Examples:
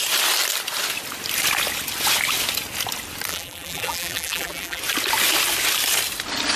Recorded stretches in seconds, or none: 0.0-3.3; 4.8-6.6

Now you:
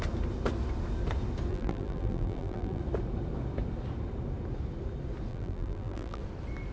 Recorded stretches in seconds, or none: 0.0-1.5; 2.8-5.3; 6.2-6.7

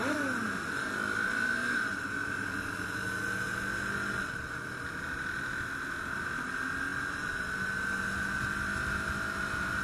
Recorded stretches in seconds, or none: 0.0-6.9; 7.7-9.8

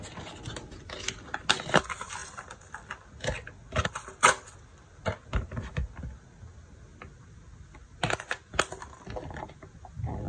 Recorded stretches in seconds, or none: 0.0-10.3

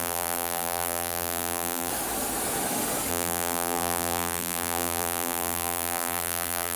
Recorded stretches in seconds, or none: 1.9-3.1